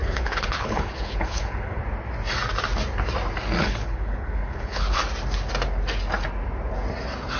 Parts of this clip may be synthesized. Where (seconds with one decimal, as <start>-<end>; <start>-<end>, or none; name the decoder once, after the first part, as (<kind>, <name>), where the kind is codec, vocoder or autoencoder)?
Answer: 0.0-1.8 (codec, HILCodec); 3.6-5.0